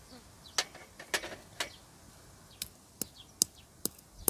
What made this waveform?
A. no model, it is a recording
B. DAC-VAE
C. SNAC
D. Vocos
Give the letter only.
A